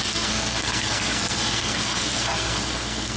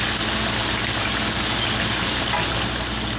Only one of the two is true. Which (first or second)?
second